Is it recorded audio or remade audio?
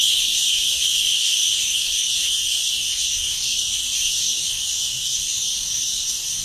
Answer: remade